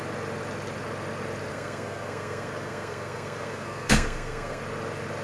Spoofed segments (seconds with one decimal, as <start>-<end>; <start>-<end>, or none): 1.5-4.6